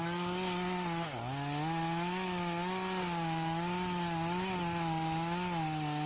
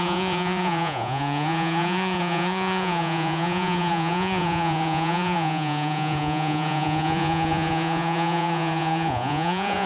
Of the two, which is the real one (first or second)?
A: first